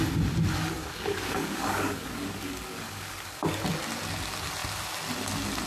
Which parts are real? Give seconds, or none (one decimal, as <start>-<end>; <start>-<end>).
0.0-0.8; 3.6-5.7